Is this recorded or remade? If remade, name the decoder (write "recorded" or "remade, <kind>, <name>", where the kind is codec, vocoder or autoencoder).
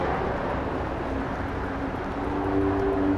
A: recorded